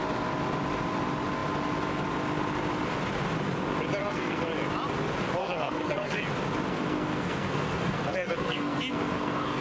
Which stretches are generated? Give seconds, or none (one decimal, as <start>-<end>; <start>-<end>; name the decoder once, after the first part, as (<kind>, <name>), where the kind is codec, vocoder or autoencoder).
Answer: 4.0-4.5 (codec, SNAC); 5.4-6.2; 6.7-9.6

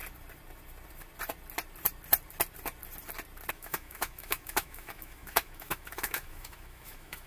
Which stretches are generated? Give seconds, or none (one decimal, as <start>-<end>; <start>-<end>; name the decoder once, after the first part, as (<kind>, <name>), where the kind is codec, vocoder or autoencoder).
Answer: 3.5-7.3 (autoencoder, DAC-VAE)